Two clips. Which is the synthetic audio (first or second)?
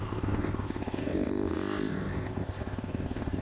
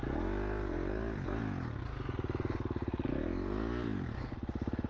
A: first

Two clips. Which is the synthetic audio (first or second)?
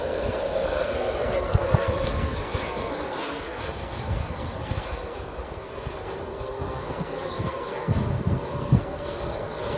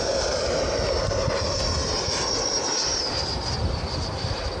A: first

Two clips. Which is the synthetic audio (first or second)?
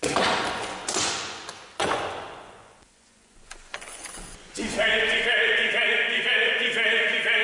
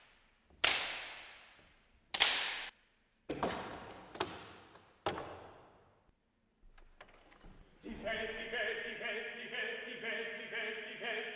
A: first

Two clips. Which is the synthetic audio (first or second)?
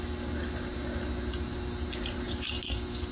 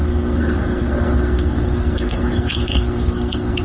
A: second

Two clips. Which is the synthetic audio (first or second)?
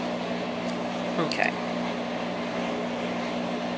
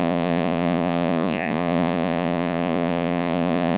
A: second